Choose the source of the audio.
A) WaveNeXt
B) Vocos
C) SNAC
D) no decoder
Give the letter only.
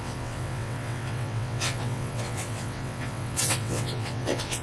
A